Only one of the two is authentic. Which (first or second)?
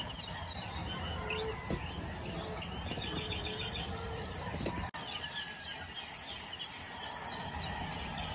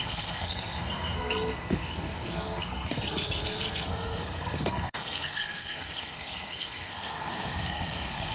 first